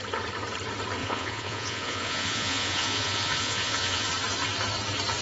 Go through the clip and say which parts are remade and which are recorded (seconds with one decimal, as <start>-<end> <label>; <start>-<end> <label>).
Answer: 0.0-1.0 recorded; 1.0-4.1 remade; 4.1-5.2 recorded